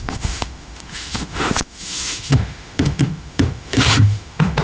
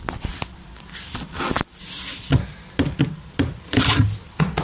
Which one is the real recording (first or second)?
second